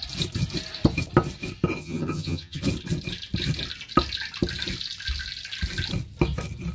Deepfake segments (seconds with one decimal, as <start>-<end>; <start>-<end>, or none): 1.8-2.6